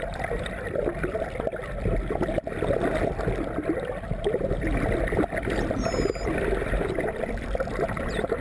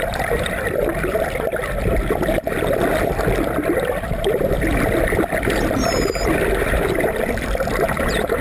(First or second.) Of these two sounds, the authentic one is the first